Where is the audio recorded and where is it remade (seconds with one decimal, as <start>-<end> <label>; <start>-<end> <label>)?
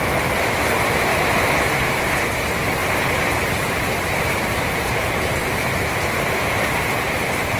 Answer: 0.0-1.1 recorded; 1.1-1.7 remade; 1.7-2.8 recorded; 2.8-6.8 remade; 6.8-7.6 recorded